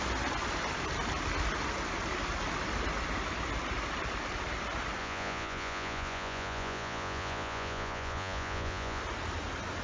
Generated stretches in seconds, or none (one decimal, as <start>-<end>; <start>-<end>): 5.0-9.0